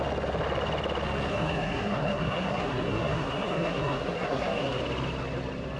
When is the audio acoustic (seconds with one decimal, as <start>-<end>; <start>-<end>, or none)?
0.0-1.3; 4.8-5.8